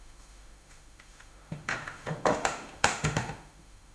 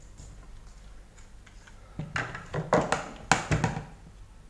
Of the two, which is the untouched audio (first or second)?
second